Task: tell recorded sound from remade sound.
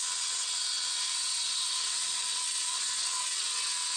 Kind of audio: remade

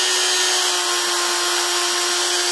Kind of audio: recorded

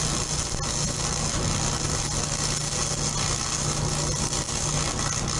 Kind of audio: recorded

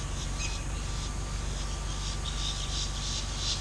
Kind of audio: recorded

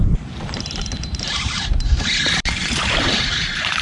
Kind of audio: remade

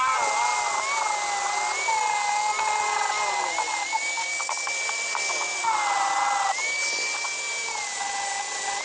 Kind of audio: recorded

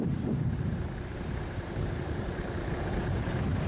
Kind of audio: remade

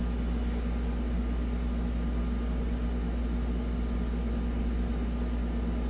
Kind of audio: recorded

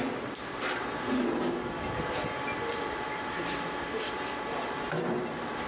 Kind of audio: recorded